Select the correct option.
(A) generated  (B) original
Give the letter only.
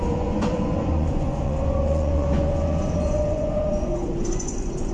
A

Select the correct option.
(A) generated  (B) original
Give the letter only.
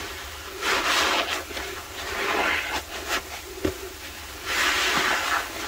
B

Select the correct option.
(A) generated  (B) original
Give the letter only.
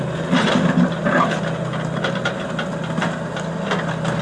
B